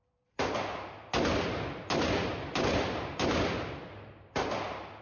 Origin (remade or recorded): recorded